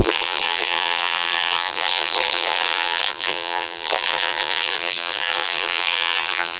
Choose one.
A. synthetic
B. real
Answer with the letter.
A